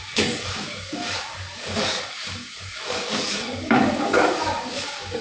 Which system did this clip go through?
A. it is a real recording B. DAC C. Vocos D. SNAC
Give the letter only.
B